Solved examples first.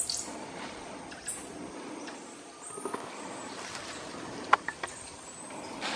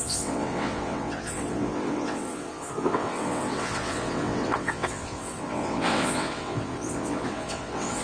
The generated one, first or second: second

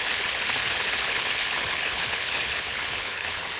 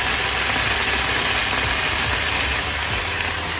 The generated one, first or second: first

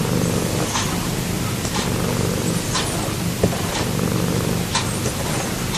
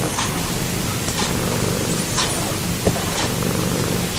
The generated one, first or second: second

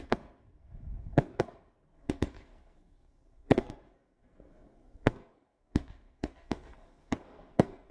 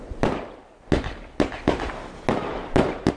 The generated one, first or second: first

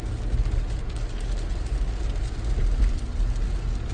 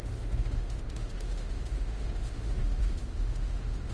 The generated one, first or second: second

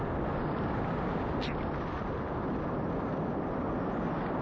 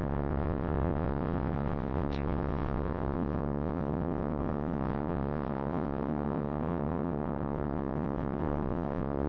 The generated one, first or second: second